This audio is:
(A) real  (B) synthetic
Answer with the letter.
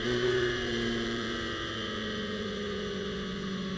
B